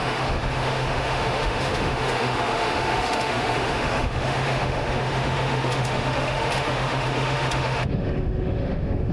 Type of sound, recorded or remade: remade